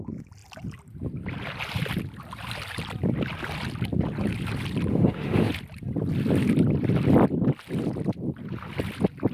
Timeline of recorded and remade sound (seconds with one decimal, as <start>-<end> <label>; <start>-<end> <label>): 0.0-4.9 recorded; 4.9-5.5 remade; 5.5-9.3 recorded